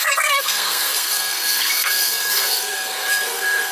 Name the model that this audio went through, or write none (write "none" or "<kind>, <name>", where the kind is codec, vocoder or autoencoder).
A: codec, SNAC